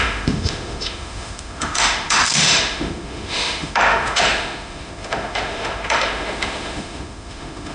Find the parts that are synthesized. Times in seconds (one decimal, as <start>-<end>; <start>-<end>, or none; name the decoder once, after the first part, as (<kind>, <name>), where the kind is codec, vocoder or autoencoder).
0.0-7.7 (autoencoder, DAC-VAE)